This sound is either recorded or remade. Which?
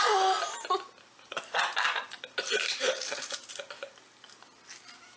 recorded